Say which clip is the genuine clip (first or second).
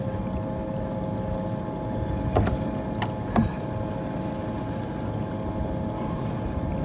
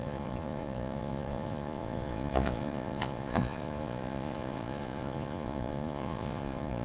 first